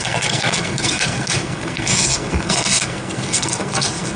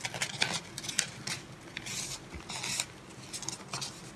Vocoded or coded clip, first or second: first